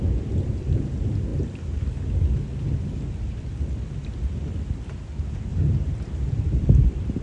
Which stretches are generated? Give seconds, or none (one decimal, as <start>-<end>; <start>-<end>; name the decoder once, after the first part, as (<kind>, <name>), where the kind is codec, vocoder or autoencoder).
5.5-6.3 (vocoder, BigVGAN v2)

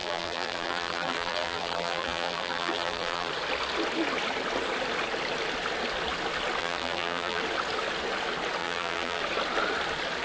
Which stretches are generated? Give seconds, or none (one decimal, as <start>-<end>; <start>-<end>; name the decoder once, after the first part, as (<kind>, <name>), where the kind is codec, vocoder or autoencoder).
0.0-3.3 (vocoder, BigVGAN v2); 6.6-7.4; 8.6-9.2

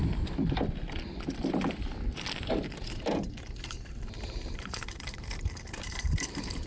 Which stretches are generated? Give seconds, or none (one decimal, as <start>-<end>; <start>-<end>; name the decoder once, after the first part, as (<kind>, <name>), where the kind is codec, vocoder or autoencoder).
3.1-6.7 (vocoder, BigVGAN v2)

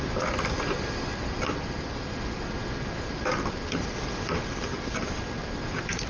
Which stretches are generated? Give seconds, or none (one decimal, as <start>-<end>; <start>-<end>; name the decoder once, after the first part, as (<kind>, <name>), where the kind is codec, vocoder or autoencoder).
none

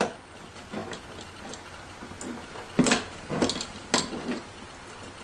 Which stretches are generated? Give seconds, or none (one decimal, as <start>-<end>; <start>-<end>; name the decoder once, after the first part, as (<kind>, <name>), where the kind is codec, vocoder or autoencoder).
none

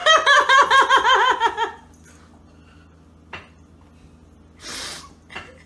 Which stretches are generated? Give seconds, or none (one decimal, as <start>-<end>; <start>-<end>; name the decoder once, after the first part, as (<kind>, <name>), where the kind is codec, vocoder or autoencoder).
none

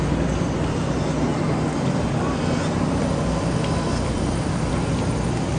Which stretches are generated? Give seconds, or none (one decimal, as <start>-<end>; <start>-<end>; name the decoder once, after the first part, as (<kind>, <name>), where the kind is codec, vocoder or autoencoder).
0.0-5.6 (vocoder, BigVGAN v2)

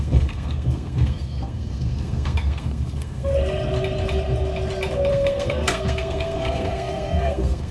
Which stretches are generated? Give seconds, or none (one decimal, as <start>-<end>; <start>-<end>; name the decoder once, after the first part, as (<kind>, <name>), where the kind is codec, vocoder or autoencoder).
0.0-3.3 (codec, SNAC); 5.1-7.7